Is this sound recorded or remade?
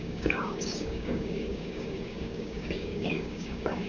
remade